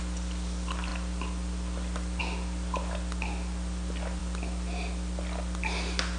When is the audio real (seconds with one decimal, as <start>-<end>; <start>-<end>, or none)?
0.0-6.2